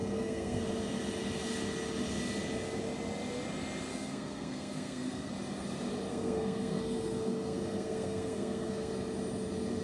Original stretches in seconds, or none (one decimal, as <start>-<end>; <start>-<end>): 0.6-3.9; 5.3-6.1; 8.9-9.8